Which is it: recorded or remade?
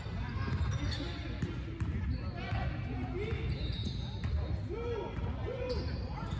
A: recorded